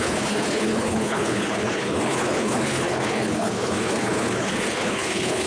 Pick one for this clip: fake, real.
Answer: fake